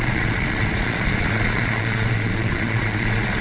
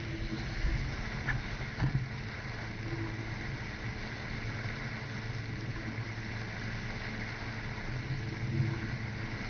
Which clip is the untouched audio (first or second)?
second